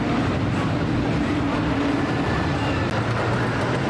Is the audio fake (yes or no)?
no